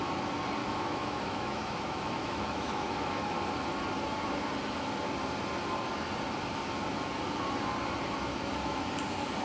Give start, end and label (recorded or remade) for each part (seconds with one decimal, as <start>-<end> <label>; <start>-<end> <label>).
0.0-0.6 recorded; 0.6-3.3 remade; 3.3-8.3 recorded; 8.3-8.9 remade; 8.9-9.4 recorded